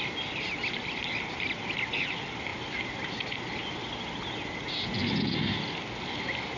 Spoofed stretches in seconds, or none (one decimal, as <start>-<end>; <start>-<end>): none